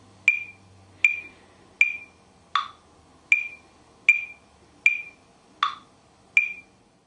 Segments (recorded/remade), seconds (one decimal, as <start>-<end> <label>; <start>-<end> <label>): 0.0-7.1 recorded